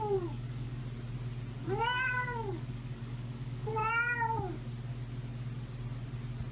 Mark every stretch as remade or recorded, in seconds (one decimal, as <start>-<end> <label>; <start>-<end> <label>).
0.0-0.8 remade; 0.8-1.5 recorded; 1.5-3.8 remade; 3.8-6.5 recorded